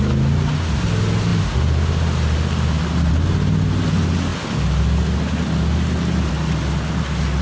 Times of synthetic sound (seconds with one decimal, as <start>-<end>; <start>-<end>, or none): none